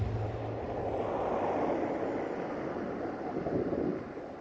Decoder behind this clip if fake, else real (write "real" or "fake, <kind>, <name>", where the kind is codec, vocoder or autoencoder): real